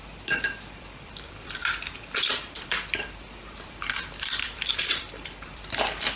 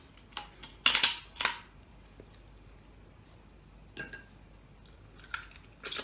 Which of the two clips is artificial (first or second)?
first